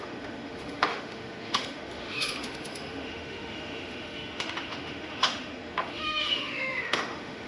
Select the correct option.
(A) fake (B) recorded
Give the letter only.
A